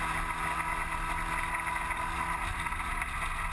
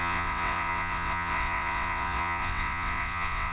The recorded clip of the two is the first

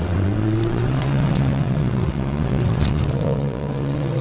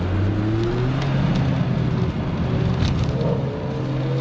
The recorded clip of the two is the second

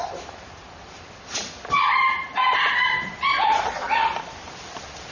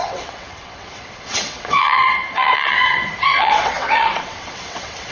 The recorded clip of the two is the first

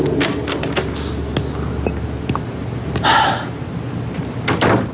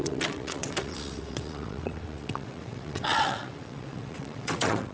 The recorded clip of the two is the first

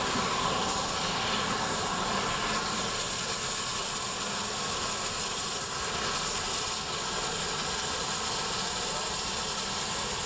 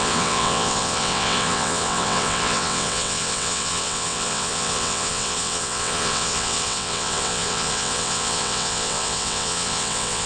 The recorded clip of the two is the first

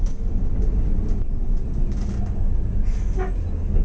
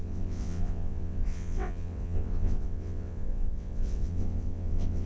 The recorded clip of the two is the first